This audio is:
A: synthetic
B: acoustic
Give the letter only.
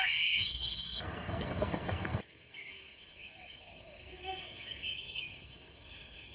A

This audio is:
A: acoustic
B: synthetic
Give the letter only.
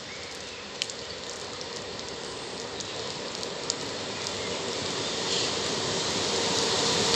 A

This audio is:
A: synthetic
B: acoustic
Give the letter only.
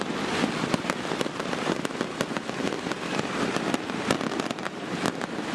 A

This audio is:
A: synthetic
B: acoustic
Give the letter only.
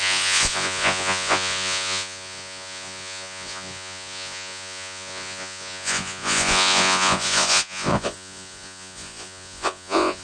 A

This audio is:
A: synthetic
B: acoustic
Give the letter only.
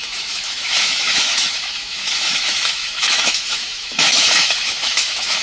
A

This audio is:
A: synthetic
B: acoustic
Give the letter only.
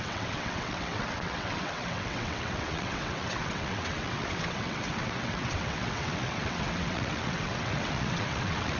A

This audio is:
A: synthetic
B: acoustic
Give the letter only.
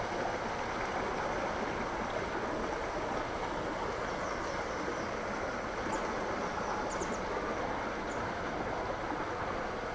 B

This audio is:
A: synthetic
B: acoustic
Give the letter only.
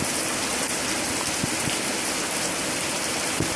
B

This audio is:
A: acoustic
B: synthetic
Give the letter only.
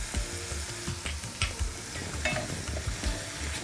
A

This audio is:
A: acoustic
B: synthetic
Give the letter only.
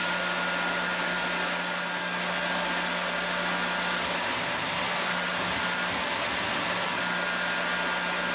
A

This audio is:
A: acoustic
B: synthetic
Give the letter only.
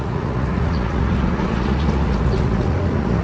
B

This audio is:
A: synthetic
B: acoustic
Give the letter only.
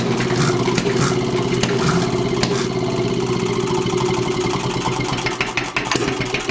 B